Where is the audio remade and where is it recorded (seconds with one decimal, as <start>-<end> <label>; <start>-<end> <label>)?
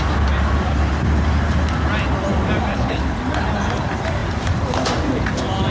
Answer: 0.0-2.7 recorded; 2.7-3.2 remade; 3.2-5.7 recorded